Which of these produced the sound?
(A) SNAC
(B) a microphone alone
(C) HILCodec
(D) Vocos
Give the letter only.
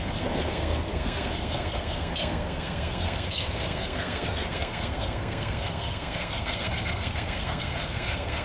A